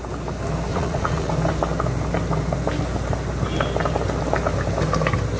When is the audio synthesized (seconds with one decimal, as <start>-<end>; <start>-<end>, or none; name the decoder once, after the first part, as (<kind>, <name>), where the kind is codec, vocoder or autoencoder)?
0.7-1.3 (vocoder, Vocos)